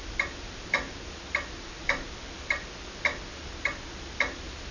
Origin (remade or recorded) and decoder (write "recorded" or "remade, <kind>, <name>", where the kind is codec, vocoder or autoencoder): recorded